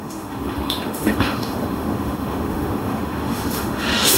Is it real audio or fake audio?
fake